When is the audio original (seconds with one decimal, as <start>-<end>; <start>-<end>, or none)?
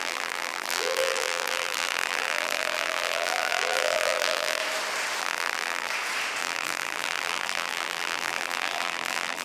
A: 4.6-5.2; 5.9-6.4